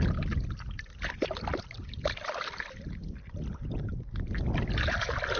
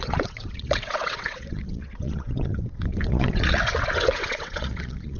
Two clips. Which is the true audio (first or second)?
first